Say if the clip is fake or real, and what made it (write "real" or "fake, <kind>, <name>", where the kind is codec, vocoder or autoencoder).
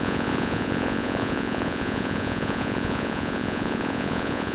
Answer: fake, vocoder, Vocos